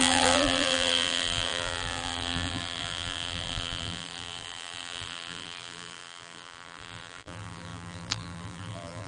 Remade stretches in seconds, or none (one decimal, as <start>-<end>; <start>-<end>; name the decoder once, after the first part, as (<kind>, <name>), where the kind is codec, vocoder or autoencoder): 0.0-9.1 (vocoder, BigVGAN v2)